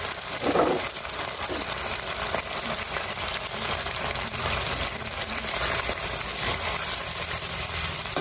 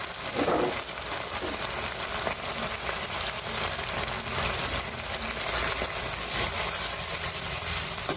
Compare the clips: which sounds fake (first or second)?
first